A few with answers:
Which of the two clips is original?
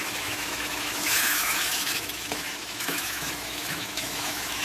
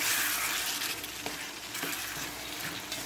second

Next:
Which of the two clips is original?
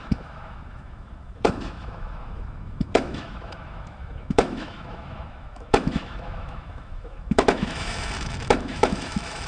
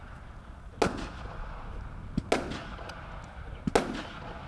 second